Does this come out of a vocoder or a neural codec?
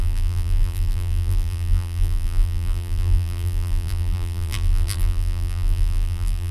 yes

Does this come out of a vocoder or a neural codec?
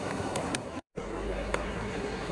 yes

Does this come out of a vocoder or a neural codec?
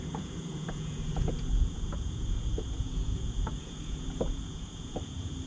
yes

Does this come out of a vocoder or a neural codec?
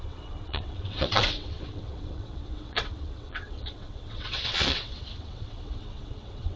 yes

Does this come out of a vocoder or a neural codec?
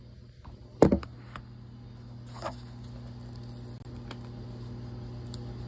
no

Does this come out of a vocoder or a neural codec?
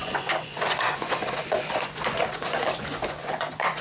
yes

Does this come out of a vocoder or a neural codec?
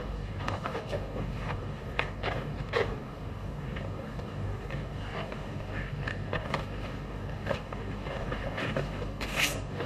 yes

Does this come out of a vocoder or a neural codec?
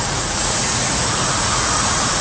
yes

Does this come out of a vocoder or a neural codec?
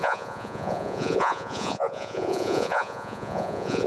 yes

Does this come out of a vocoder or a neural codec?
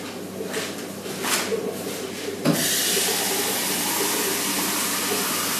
no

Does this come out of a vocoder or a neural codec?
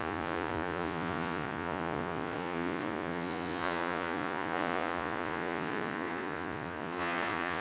yes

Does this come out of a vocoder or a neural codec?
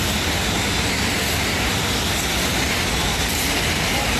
no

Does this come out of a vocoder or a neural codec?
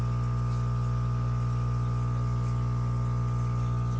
no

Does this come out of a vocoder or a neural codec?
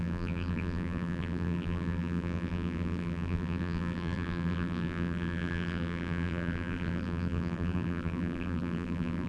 yes